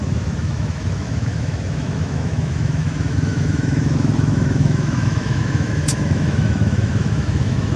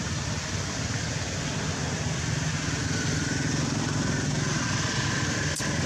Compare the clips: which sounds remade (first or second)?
first